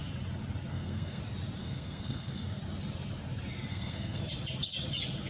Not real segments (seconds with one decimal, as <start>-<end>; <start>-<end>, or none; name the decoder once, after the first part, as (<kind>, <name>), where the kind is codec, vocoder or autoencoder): 0.7-1.2 (codec, SNAC); 1.6-2.6; 3.7-4.2